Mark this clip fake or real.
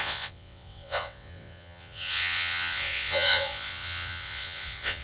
fake